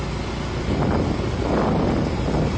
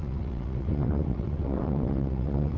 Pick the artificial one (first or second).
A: second